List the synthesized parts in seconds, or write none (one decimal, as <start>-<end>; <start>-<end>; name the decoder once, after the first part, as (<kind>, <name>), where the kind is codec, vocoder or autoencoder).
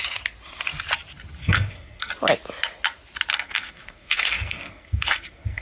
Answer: 1.4-2.1 (codec, SNAC); 3.3-5.6